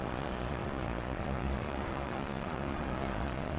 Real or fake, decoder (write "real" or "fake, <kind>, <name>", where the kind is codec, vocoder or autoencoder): fake, vocoder, Vocos